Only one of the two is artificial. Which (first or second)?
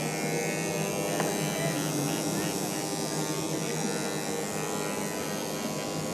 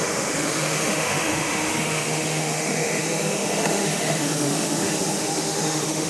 second